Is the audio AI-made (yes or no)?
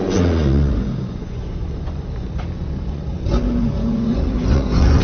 yes